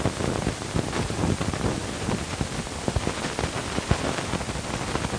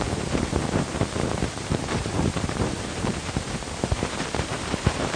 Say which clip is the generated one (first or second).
second